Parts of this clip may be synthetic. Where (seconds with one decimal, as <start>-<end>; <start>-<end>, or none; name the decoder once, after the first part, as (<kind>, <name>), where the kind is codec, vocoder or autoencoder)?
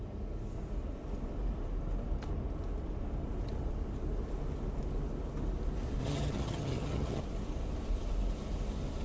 6.0-7.2 (vocoder, HiFi-GAN)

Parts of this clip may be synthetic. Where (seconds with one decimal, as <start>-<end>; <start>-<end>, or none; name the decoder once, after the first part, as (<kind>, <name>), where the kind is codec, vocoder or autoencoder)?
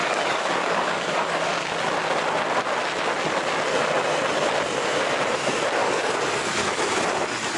0.0-1.4 (codec, DAC); 5.8-6.9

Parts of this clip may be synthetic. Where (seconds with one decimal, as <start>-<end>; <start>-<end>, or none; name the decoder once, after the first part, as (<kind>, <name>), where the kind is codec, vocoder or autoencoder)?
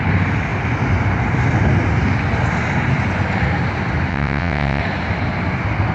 4.1-4.8 (vocoder, WaveNeXt)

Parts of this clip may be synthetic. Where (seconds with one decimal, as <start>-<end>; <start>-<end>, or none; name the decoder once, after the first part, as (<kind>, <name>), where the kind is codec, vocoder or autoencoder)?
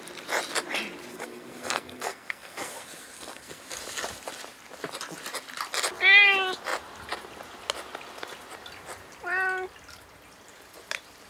1.1-3.6 (codec, SNAC)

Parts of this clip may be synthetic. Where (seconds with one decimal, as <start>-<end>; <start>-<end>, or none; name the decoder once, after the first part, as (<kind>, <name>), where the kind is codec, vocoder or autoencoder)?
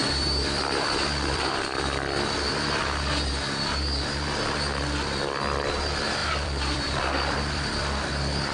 0.0-2.8 (vocoder, BigVGAN v2); 6.2-8.1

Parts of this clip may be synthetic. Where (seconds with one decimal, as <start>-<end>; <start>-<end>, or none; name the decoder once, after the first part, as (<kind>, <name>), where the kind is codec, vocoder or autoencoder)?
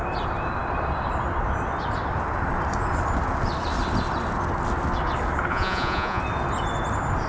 5.5-6.2 (vocoder, Vocos)